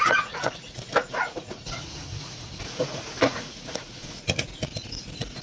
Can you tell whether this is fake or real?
fake